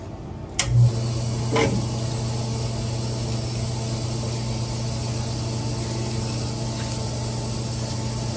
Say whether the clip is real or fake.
real